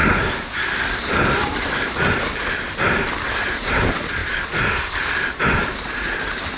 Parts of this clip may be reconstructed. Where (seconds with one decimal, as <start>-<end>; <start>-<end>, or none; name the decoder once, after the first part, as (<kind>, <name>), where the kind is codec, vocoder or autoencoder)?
0.0-2.7 (vocoder, BigVGAN v2); 4.2-5.4